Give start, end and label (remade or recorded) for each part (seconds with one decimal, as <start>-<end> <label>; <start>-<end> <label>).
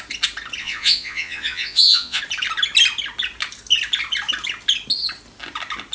0.0-0.6 recorded; 0.6-2.2 remade; 2.2-5.9 recorded